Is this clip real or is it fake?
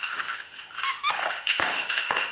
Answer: fake